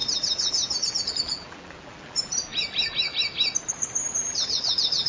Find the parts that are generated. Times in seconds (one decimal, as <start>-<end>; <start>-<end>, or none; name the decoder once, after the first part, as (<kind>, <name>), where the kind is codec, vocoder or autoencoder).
0.0-2.5 (vocoder, BigVGAN v2); 4.0-5.1